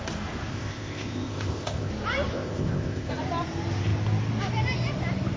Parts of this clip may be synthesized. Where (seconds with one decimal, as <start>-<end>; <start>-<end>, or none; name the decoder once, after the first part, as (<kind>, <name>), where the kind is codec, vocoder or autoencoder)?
0.5-1.9 (codec, ZipCodec); 2.3-3.1

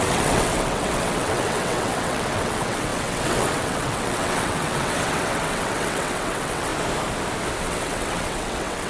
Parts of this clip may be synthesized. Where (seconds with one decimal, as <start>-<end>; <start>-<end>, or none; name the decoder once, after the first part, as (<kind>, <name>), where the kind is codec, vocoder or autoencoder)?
0.0-6.7 (vocoder, WaveNeXt); 7.6-8.9

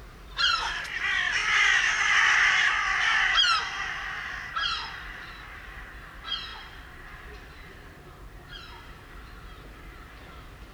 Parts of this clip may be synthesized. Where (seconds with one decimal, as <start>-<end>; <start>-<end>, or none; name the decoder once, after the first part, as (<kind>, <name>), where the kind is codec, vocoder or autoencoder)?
0.0-1.4 (vocoder, BigVGAN v2); 2.6-10.7

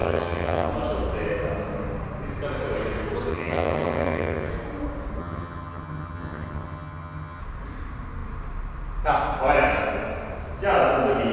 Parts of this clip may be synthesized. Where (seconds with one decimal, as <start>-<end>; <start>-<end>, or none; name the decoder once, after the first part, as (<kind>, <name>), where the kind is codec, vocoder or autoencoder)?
0.0-0.7 (vocoder, HiFi-GAN); 3.3-4.5; 5.2-7.4

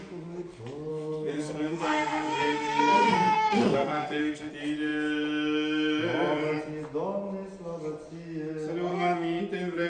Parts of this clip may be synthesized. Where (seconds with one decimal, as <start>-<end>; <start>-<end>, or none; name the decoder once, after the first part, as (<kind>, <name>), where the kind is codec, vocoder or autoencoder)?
0.9-4.5 (codec, SNAC); 8.9-9.4